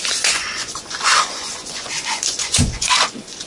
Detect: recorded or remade remade